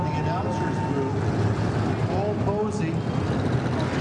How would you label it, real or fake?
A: real